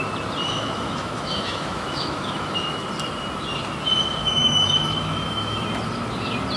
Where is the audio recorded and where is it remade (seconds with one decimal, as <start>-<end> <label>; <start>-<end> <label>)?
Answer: 0.0-0.4 recorded; 0.4-2.6 remade; 2.6-4.2 recorded; 4.2-5.6 remade; 5.6-6.6 recorded